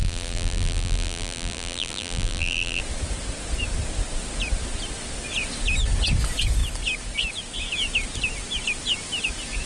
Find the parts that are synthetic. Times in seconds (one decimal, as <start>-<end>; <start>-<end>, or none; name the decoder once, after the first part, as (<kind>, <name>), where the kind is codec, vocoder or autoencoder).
0.0-2.8 (vocoder, BigVGAN v2)